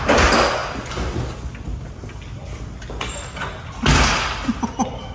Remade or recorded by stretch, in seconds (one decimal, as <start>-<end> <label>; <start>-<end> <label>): 0.0-5.1 recorded